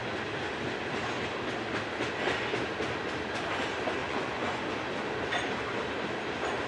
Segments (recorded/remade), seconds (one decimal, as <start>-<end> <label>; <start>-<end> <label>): 0.0-4.0 recorded; 4.0-4.6 remade; 4.6-6.7 recorded